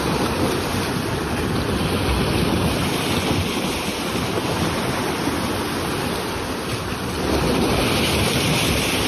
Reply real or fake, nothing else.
real